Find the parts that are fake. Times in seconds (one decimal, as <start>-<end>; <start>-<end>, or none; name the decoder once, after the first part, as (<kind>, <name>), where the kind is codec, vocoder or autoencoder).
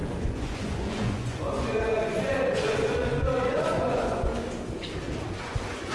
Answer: 0.0-4.3 (vocoder, Vocos); 5.4-5.9